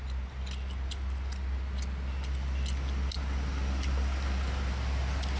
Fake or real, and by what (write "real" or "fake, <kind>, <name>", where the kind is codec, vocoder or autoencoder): real